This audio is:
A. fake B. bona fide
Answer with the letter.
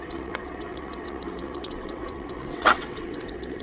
A